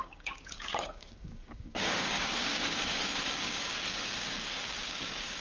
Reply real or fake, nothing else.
fake